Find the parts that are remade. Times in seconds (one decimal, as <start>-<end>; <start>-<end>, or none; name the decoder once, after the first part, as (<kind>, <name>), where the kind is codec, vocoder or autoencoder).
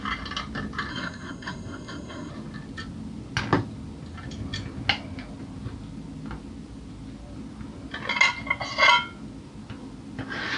0.9-2.3 (codec, SNAC)